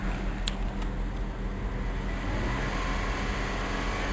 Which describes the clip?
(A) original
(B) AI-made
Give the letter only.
A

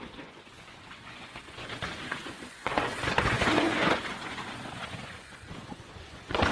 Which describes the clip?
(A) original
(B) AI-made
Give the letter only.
B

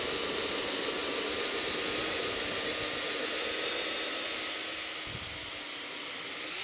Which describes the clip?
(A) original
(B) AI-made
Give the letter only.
A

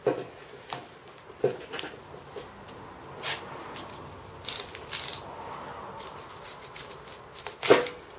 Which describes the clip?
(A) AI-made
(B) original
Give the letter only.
B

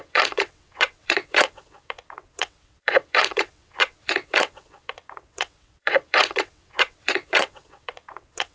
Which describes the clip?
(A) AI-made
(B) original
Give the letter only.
A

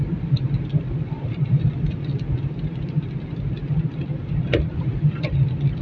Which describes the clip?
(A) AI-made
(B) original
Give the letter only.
A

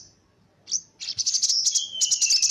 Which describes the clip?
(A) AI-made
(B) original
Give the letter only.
B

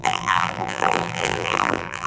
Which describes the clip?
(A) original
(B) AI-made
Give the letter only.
B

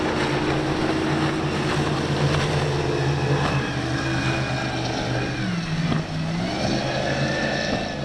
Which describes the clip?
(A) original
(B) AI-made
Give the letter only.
A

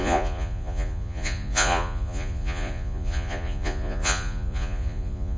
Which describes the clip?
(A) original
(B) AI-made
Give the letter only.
B